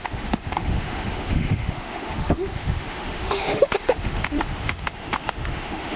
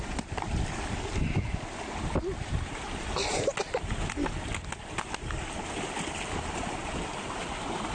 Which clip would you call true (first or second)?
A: second